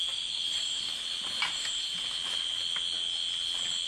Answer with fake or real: real